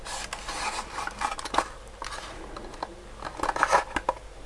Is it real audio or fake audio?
real